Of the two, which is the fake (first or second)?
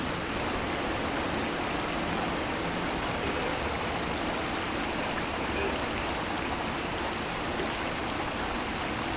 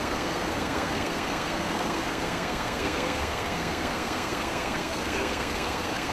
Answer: second